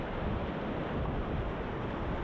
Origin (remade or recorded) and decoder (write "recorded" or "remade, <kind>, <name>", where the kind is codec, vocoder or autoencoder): recorded